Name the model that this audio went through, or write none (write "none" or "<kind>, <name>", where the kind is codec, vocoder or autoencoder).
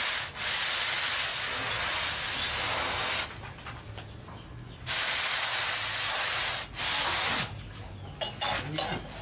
none